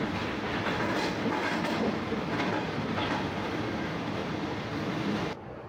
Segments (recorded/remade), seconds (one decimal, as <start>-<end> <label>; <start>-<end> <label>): 0.0-4.2 remade; 4.2-5.7 recorded